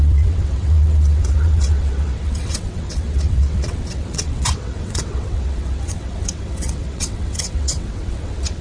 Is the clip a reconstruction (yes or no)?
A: yes